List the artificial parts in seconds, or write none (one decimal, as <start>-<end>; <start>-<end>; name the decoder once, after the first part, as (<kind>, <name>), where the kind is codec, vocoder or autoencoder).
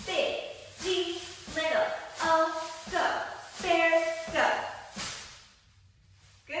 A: 5.3-6.6 (vocoder, BigVGAN v2)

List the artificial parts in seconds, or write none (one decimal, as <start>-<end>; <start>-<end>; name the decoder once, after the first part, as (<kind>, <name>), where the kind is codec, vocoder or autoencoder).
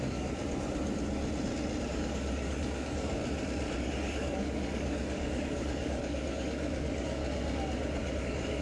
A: 0.0-0.4 (codec, DAC); 1.9-3.2; 3.8-7.2; 8.2-8.6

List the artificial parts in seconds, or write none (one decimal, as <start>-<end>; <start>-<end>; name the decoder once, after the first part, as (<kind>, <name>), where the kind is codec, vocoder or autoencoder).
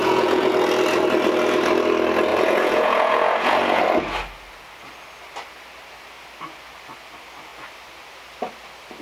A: 0.0-0.5 (vocoder, Vocos); 2.3-3.8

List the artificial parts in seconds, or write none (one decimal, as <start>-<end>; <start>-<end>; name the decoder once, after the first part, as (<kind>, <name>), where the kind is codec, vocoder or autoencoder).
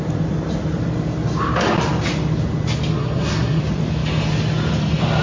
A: 2.9-3.6 (codec, SNAC)